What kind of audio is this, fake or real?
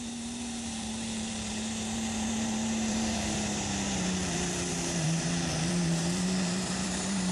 fake